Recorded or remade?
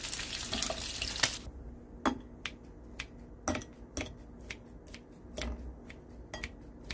recorded